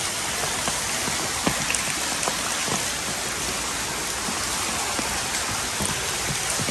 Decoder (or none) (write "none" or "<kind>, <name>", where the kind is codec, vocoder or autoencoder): none